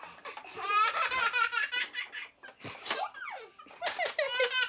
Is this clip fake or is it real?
real